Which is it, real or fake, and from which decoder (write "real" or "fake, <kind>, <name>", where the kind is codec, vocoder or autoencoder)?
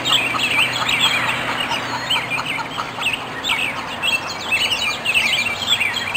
real